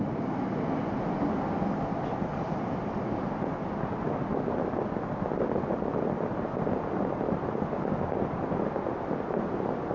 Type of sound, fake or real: real